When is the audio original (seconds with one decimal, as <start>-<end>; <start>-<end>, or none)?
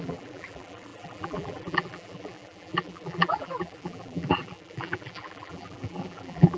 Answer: none